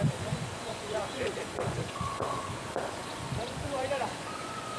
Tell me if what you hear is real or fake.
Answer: fake